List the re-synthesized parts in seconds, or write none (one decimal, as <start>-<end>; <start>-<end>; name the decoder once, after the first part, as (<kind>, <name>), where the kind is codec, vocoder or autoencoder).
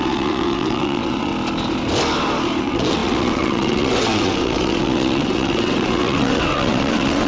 0.0-1.3 (vocoder, WaveNeXt); 2.6-7.3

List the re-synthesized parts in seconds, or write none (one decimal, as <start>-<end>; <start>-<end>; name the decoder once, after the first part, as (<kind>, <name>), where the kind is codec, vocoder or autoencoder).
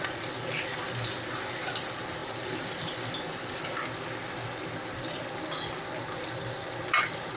none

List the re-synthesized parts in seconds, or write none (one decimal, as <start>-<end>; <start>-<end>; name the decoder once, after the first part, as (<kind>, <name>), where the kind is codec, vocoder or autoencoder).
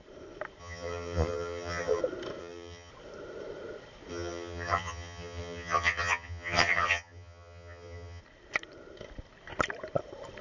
0.6-2.0 (vocoder, HiFi-GAN); 2.4-2.9; 4.1-8.2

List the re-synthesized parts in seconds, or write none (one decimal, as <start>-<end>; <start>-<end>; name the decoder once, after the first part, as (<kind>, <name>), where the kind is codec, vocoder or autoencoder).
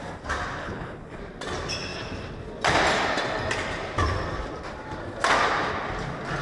0.6-1.2 (codec, HILCodec)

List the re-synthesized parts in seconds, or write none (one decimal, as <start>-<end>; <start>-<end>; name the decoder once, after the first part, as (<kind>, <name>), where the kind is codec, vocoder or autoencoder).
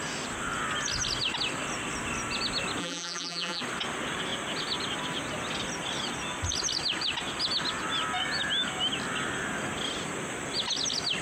2.8-3.6 (vocoder, BigVGAN v2)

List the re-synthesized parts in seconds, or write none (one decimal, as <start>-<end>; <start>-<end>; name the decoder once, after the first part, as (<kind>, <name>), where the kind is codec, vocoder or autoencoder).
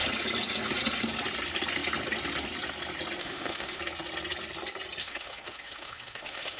3.2-3.8 (autoencoder, DAC-VAE); 5.0-6.6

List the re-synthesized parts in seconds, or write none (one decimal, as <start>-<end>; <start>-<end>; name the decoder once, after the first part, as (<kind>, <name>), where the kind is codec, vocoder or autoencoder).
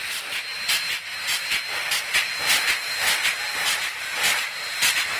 none